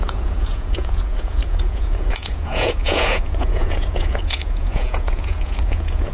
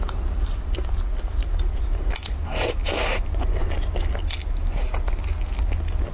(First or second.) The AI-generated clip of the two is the first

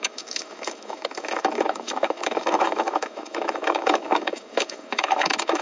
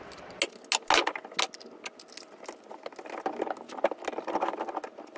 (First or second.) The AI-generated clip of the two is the first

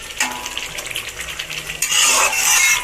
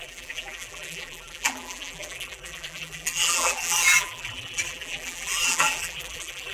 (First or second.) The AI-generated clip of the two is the second